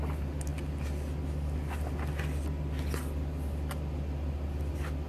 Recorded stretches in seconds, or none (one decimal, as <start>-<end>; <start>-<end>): 0.0-5.1